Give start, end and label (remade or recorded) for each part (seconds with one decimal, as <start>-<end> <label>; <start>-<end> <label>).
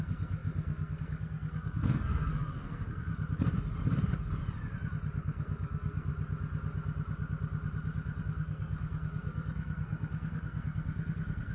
0.0-3.1 remade; 3.1-5.2 recorded; 5.2-6.1 remade; 6.1-8.2 recorded; 8.2-11.5 remade